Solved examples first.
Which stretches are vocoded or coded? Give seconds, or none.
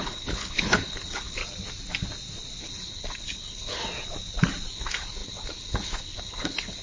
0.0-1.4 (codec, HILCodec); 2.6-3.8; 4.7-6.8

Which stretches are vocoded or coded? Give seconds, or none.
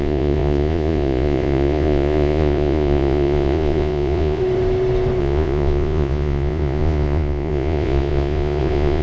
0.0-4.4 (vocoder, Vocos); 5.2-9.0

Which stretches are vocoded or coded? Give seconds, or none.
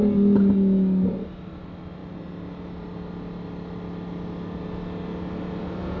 none